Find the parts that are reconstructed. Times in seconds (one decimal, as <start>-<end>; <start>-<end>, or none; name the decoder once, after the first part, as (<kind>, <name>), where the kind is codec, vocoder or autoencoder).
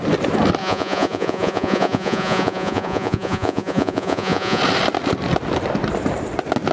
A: 0.6-4.6 (vocoder, Vocos)